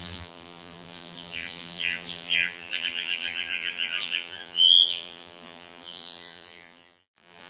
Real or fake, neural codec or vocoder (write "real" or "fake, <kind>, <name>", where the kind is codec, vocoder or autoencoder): fake, vocoder, BigVGAN v2